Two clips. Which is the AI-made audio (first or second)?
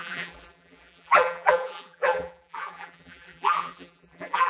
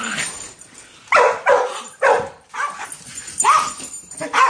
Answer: first